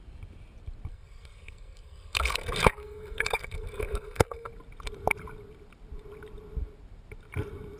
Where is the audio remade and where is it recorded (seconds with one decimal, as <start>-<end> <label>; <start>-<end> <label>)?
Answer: 0.0-0.9 recorded; 0.9-4.5 remade; 4.5-7.8 recorded